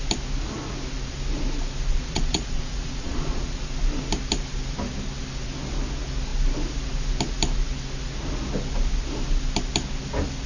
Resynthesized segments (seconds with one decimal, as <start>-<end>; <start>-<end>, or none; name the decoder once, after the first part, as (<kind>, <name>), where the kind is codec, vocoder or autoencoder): 1.9-3.7 (vocoder, Vocos)